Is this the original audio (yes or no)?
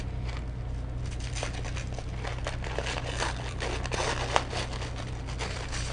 yes